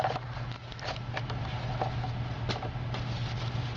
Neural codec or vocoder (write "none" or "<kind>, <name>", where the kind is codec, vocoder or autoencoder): none